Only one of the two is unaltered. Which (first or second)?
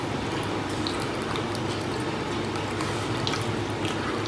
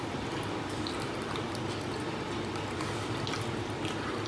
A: first